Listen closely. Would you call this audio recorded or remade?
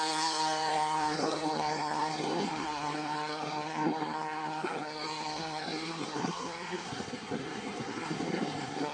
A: remade